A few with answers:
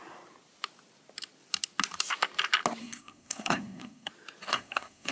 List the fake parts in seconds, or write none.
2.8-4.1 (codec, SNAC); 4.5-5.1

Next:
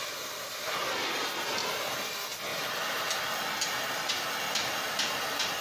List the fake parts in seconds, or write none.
0.0-0.8 (vocoder, BigVGAN v2); 2.5-3.5

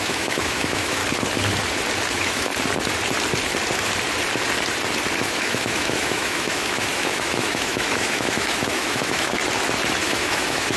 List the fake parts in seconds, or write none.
0.0-1.0 (autoencoder, DAC-VAE); 2.1-2.5; 5.2-9.4; 10.0-10.8

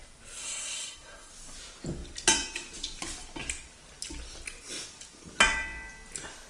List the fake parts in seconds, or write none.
0.4-1.3 (codec, SNAC)